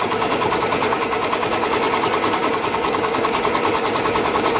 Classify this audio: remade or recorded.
remade